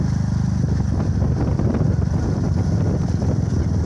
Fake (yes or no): no